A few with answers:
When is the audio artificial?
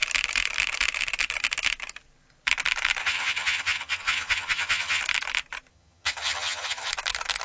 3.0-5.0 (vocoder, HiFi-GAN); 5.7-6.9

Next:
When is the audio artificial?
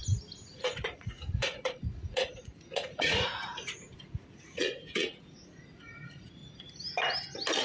0.5-6.4 (vocoder, Vocos)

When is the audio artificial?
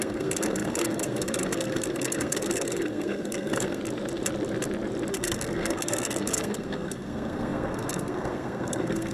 0.0-3.8 (codec, SNAC); 5.1-9.1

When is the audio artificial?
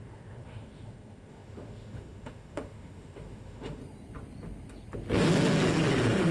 0.0-3.8 (autoencoder, DAC-VAE)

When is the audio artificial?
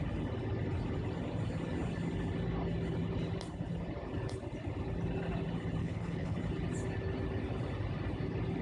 5.8-6.4 (codec, HILCodec)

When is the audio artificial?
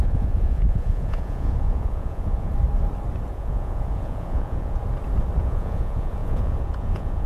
0.0-2.5 (vocoder, Vocos); 3.3-4.8; 5.4-7.3